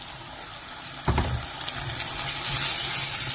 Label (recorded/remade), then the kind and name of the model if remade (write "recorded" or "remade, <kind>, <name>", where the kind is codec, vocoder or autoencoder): recorded